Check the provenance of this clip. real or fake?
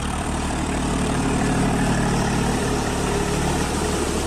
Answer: fake